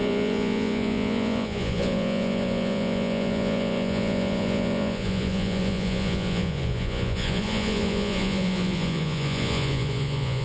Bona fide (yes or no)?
no